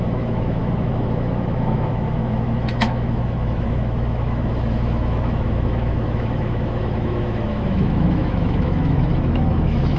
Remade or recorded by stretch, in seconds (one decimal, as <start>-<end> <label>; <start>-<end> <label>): 0.0-10.0 remade